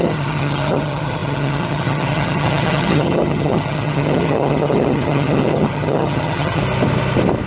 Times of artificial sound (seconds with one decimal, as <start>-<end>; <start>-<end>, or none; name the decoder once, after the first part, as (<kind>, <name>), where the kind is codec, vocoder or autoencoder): 0.0-6.6 (vocoder, HiFi-GAN)